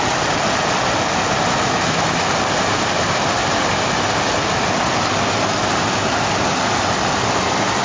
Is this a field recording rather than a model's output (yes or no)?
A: yes